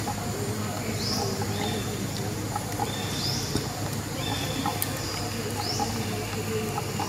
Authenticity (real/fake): real